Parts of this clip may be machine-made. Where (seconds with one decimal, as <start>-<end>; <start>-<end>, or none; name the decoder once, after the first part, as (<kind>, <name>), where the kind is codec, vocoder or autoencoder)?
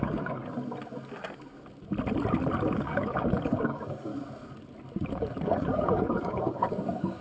0.0-0.4 (codec, DAC); 2.7-4.1; 5.1-7.2